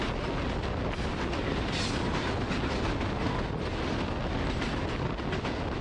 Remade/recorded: recorded